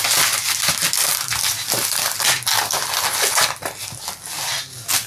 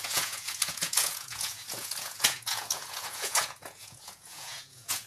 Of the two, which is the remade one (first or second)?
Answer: second